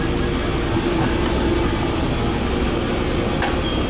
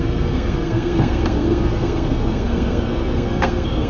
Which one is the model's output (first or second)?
second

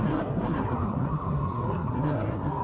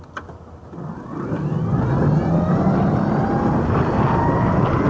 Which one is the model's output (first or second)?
first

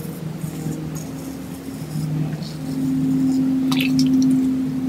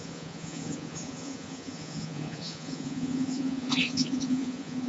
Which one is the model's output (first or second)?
second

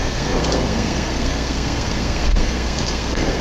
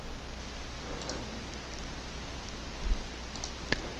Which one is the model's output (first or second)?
first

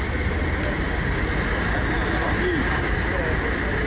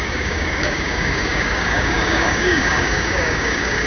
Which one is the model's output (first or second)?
second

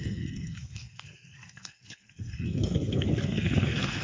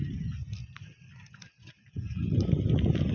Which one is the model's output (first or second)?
first